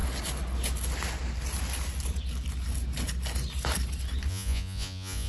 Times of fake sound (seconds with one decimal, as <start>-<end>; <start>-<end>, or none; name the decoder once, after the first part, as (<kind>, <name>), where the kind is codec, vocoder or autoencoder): 4.3-5.3 (vocoder, Vocos)